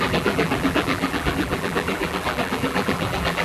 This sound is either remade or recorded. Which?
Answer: remade